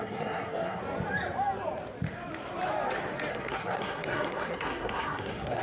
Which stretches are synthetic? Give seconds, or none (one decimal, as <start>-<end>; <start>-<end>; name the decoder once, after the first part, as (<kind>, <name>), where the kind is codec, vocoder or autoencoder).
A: 0.0-0.8 (codec, SNAC); 3.3-5.6